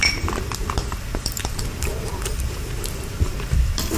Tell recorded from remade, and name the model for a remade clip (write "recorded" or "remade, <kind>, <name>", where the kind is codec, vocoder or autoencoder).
remade, vocoder, BigVGAN v2